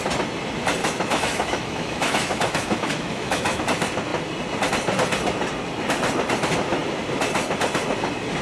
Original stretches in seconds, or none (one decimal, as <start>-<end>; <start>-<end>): 0.0-0.8; 3.6-8.4